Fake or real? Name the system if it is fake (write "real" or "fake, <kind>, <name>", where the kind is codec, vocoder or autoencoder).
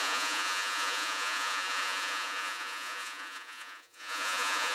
fake, vocoder, Vocos